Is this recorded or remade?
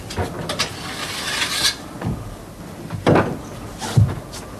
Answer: recorded